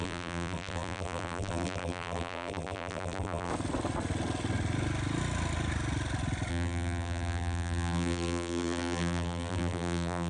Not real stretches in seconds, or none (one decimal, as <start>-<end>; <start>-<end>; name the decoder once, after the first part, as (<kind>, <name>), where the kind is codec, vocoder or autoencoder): 0.0-3.5 (vocoder, BigVGAN v2); 6.5-10.3